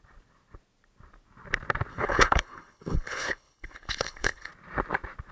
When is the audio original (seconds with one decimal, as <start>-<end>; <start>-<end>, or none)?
0.0-1.9; 4.5-5.3